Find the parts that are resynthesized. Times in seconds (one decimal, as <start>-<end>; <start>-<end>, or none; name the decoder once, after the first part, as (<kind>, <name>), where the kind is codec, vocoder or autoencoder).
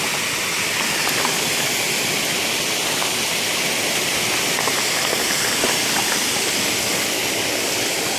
3.0-4.3 (vocoder, BigVGAN v2)